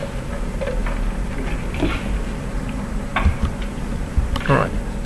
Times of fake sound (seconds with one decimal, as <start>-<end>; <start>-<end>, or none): none

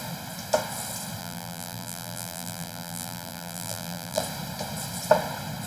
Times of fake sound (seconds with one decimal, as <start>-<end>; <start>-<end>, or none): 1.2-4.2

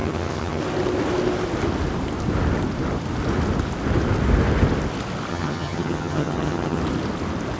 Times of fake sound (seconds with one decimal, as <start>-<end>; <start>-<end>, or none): 0.0-0.6; 5.3-6.8

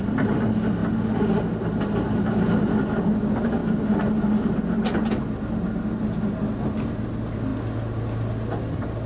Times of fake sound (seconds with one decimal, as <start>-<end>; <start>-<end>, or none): none

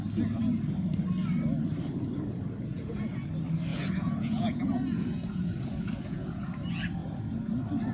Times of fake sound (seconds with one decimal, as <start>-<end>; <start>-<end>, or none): 2.7-3.3; 3.7-6.5; 7.0-7.5